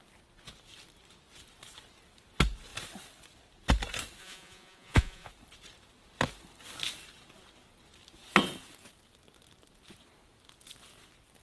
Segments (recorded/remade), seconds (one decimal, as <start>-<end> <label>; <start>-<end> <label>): 0.0-4.2 recorded; 4.2-5.3 remade; 5.3-11.4 recorded